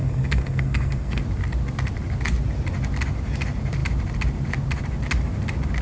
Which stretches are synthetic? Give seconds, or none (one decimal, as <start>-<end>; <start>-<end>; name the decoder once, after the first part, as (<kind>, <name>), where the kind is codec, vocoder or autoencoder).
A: 0.0-1.2 (codec, SNAC)